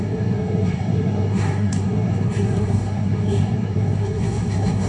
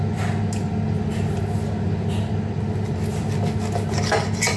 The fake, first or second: first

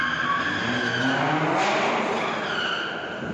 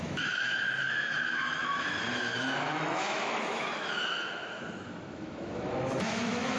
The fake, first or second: second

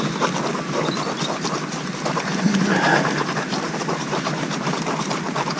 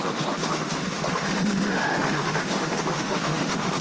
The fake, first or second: second